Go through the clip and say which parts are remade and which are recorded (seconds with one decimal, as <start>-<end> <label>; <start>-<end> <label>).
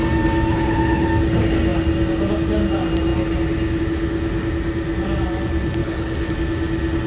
0.0-0.5 recorded; 0.5-1.1 remade; 1.1-5.8 recorded; 5.8-6.3 remade; 6.3-7.1 recorded